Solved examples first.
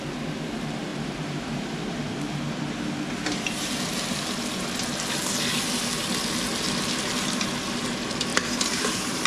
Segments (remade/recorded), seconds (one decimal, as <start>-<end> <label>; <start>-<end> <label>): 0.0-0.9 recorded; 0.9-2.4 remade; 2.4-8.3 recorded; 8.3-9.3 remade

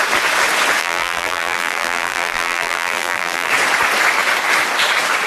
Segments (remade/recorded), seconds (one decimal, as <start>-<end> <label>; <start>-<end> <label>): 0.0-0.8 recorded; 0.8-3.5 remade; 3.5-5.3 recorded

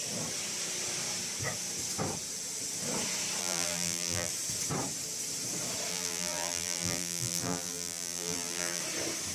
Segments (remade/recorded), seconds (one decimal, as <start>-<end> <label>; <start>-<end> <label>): 0.0-3.4 recorded; 3.4-4.3 remade; 4.3-5.9 recorded; 5.9-8.8 remade; 8.8-9.3 recorded

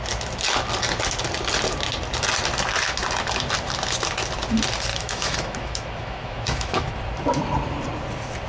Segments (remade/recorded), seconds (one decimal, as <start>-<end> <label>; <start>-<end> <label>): 0.0-4.9 recorded; 4.9-6.9 remade; 6.9-8.5 recorded

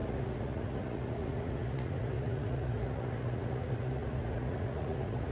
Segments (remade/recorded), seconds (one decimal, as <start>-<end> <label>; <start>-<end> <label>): 0.0-5.3 remade

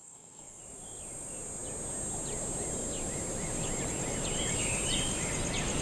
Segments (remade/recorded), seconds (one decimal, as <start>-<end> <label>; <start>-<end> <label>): 0.0-0.6 remade; 0.6-5.8 recorded

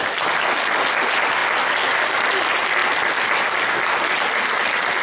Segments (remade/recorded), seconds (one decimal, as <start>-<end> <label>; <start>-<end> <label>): 0.0-1.4 recorded; 1.4-2.1 remade; 2.1-5.0 recorded